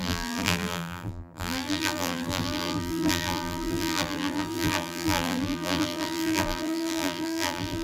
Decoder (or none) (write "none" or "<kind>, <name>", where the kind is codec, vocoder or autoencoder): vocoder, BigVGAN v2